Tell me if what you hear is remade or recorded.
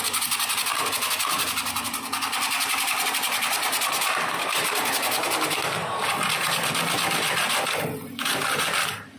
recorded